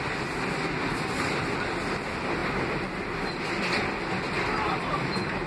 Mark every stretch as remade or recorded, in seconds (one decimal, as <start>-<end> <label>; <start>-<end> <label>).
0.0-5.5 recorded